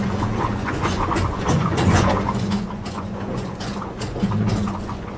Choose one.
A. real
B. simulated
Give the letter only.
B